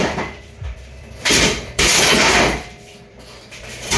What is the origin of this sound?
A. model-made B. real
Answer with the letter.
A